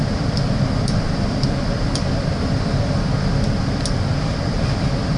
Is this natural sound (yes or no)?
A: no